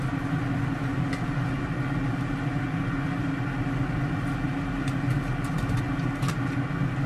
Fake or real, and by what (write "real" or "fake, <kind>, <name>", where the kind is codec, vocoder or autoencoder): real